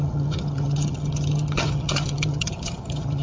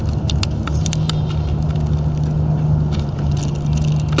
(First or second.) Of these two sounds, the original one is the second